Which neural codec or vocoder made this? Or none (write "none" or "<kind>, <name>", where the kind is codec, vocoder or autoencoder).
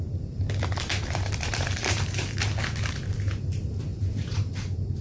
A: vocoder, BigVGAN v2